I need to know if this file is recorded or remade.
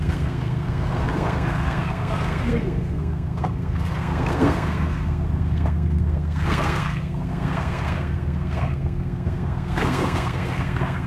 remade